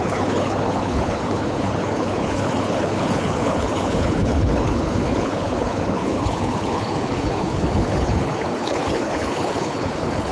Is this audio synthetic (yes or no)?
yes